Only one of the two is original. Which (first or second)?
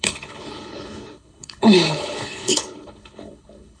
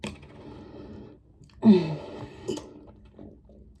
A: second